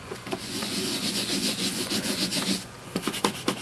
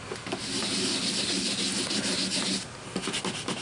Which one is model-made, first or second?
first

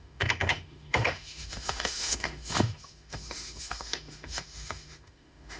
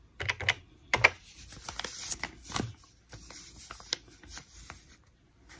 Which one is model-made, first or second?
first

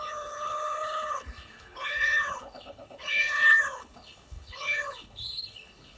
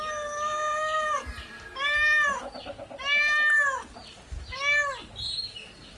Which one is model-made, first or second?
first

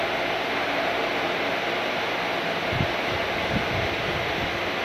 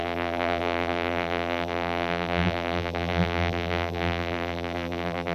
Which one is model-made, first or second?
second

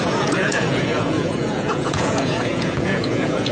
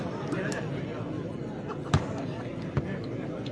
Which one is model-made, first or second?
first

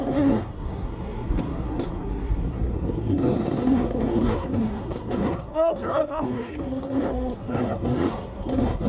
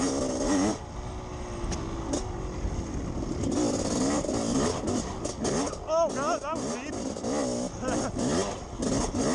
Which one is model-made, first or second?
first